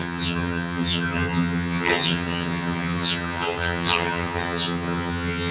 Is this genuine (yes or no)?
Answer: no